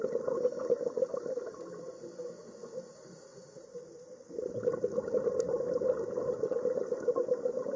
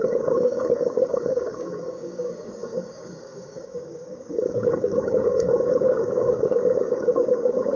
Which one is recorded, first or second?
first